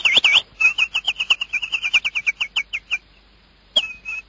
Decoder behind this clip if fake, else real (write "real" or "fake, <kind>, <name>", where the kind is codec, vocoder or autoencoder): fake, vocoder, BigVGAN v2